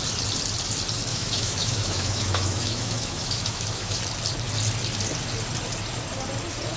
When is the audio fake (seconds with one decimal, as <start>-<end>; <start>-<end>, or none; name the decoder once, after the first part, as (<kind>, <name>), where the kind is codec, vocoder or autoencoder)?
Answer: 1.1-4.0 (autoencoder, DAC-VAE)